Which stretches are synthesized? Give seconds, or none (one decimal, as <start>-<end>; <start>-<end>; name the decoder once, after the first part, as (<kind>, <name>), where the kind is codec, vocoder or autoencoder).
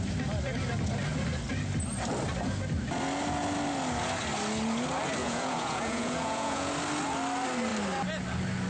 5.2-6.7 (vocoder, Vocos)